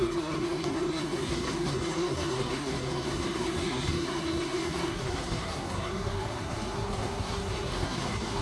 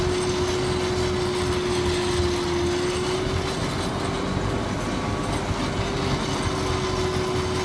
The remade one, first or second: first